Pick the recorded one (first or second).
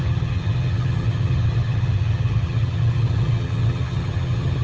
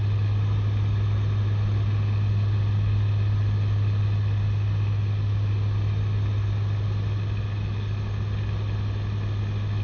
second